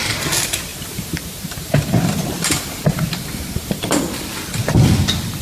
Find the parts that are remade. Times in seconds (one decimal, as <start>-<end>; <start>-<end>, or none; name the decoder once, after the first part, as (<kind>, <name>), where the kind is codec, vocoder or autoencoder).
0.7-3.9 (vocoder, BigVGAN v2)